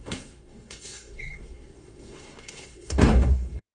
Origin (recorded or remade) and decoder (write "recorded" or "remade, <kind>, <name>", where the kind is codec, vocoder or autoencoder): remade, codec, SNAC